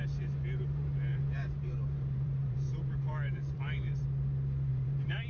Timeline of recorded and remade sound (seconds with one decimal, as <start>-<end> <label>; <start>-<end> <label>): 0.0-1.1 recorded; 1.1-4.0 remade; 4.0-4.7 recorded; 4.7-5.3 remade